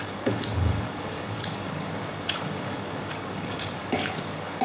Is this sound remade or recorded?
remade